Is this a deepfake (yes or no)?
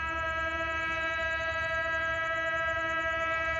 yes